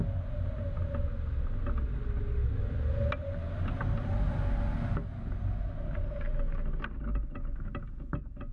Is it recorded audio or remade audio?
recorded